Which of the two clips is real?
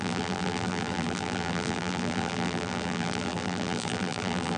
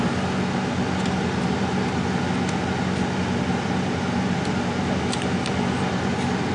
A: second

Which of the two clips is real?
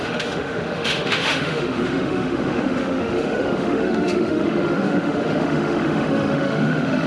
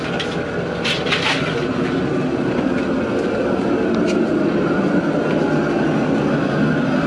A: second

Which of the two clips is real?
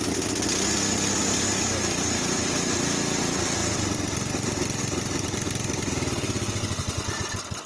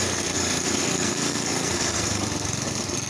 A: first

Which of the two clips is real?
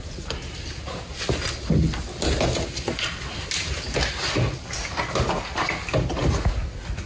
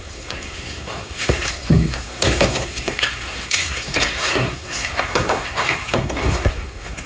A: first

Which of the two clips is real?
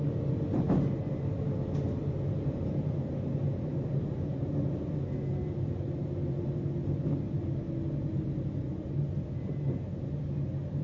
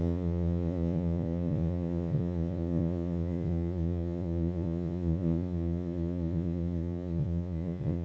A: first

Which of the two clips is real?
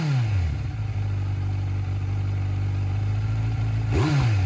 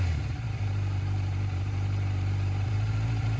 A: first